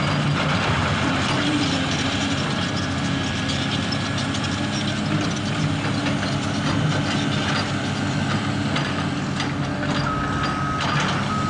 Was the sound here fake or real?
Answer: real